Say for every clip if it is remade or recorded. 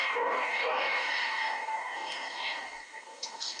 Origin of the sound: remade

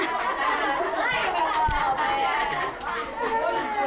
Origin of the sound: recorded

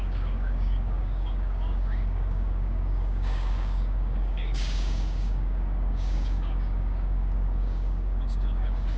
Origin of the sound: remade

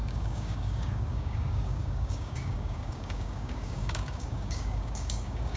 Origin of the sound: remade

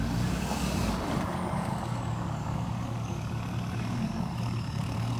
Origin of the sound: remade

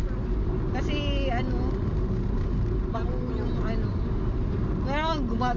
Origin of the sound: recorded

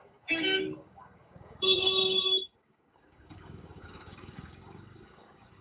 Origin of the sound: remade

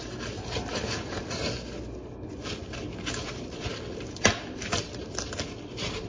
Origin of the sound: recorded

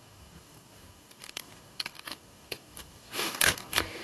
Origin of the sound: remade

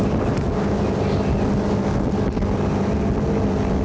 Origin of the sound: recorded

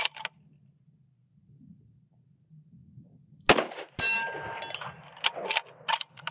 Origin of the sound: recorded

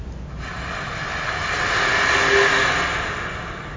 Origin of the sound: recorded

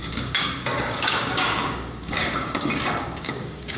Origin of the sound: remade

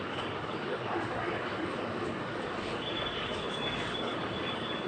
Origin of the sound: remade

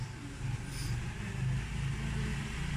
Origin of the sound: recorded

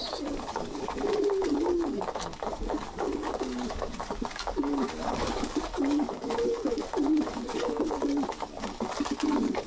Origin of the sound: remade